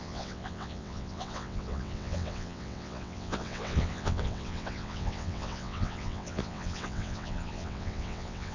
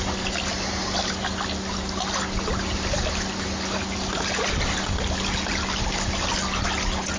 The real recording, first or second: second